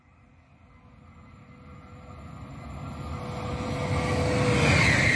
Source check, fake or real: real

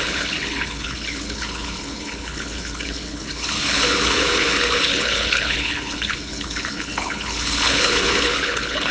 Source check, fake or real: fake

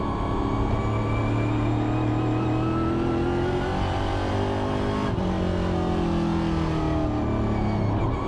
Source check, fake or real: real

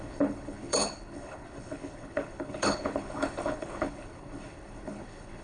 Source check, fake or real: fake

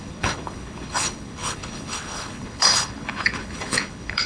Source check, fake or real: fake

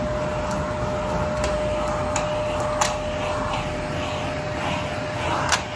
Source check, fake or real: real